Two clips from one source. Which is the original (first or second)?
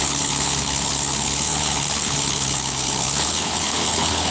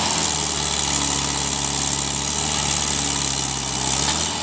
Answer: second